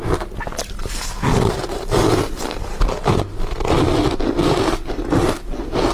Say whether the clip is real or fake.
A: real